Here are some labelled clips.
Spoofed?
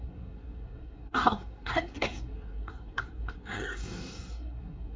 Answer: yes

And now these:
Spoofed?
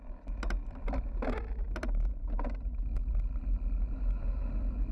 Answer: no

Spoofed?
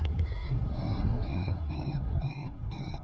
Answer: yes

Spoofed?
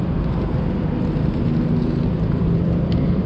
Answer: no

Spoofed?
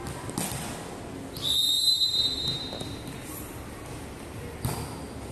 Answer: no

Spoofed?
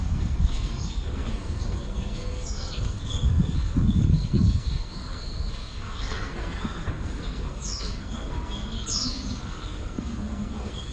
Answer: yes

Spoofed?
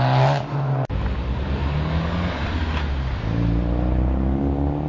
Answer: no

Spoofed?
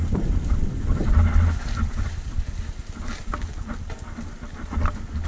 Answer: no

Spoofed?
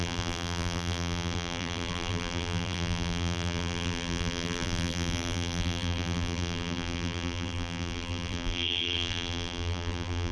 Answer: yes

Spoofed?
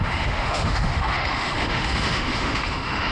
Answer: yes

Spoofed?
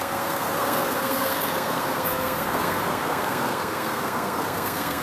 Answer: yes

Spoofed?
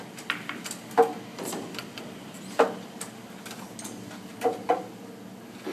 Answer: no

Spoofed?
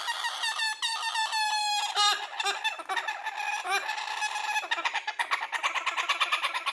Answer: no